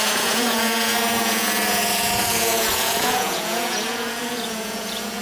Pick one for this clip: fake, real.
fake